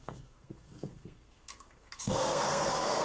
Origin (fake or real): fake